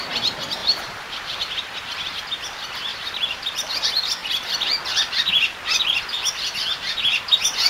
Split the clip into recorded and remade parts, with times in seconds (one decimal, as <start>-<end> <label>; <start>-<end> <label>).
0.0-0.6 recorded; 0.6-1.4 remade; 1.4-2.9 recorded; 2.9-3.7 remade; 3.7-7.7 recorded

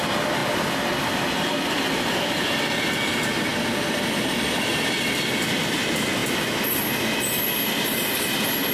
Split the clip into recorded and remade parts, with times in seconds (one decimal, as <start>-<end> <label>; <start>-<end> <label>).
0.0-8.7 recorded

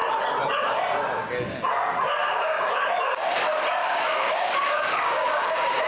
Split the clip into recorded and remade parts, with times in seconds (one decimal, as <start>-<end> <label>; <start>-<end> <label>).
0.0-2.2 recorded; 2.2-2.8 remade; 2.8-3.8 recorded; 3.8-5.9 remade

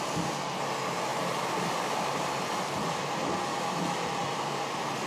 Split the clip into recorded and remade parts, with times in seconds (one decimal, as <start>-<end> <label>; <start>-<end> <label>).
0.0-1.1 recorded; 1.1-2.4 remade; 2.4-3.2 recorded; 3.2-3.8 remade; 3.8-5.1 recorded

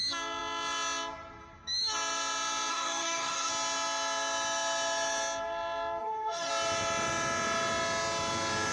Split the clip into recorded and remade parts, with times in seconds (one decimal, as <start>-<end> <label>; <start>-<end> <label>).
0.0-2.7 recorded; 2.7-3.5 remade; 3.5-6.0 recorded; 6.0-6.5 remade; 6.5-8.7 recorded